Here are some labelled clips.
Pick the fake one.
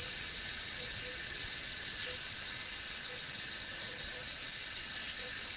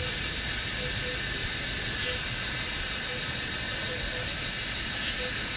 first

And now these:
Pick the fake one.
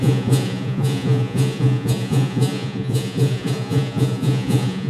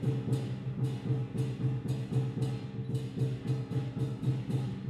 first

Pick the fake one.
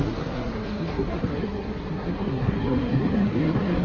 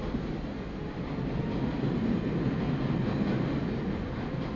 first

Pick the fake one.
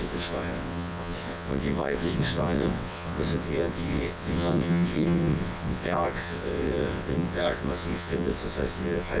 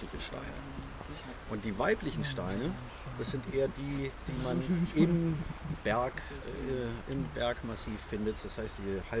first